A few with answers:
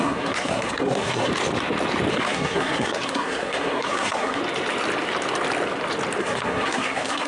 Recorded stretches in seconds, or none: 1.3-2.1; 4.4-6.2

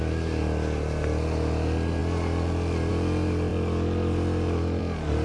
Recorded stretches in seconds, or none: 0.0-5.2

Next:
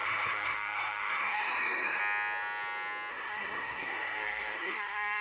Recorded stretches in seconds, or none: 2.0-3.1